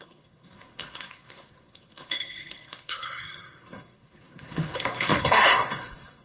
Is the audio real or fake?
fake